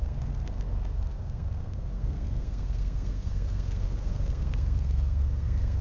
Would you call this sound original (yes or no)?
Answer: no